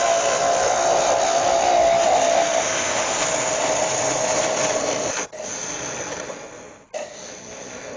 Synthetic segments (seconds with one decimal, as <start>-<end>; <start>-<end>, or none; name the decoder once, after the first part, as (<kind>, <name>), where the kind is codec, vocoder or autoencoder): 2.6-3.2 (autoencoder, DAC-VAE)